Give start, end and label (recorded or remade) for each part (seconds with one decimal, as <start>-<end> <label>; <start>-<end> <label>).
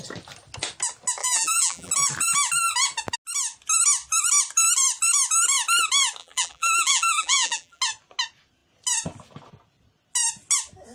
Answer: 0.0-1.2 recorded; 1.2-1.9 remade; 1.9-6.2 recorded; 6.2-7.8 remade; 7.8-10.9 recorded